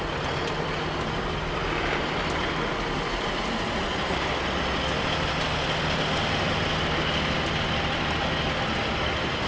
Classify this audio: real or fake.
real